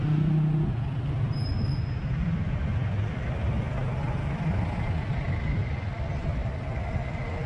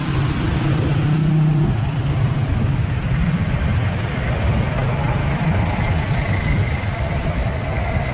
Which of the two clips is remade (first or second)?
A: second